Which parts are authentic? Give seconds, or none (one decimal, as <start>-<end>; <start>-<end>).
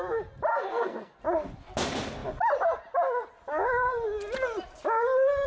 0.0-0.5; 1.2-5.5